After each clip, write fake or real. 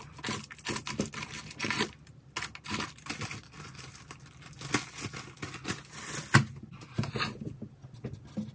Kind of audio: real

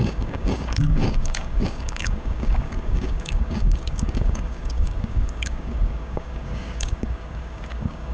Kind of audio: fake